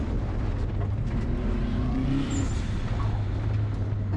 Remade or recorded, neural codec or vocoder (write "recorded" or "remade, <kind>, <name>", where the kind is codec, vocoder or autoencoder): recorded